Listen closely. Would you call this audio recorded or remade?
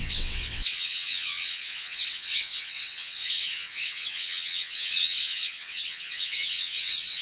remade